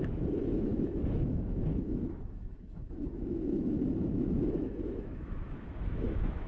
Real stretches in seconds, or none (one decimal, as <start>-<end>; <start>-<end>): none